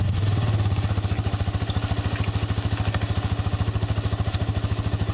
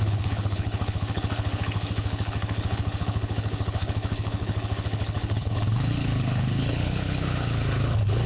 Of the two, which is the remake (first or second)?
second